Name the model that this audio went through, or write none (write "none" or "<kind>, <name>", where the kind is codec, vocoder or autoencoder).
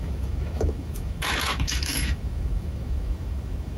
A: autoencoder, DAC-VAE